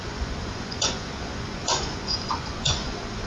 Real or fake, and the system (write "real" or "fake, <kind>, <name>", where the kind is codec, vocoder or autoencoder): fake, vocoder, Vocos